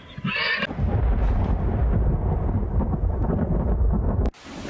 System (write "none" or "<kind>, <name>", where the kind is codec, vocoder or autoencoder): none